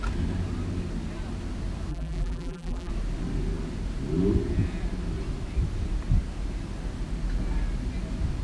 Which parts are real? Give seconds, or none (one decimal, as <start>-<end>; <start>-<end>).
0.0-1.9; 2.9-8.4